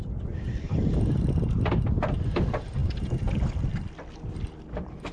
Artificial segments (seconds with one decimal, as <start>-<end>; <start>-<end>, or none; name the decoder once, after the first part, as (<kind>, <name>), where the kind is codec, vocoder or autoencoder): none